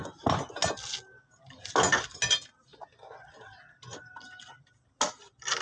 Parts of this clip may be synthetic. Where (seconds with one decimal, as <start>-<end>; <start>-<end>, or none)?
none